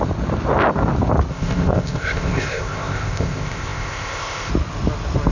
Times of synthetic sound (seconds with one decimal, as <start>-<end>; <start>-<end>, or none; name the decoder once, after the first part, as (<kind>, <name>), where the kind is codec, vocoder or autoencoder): 1.3-4.5 (codec, ZipCodec)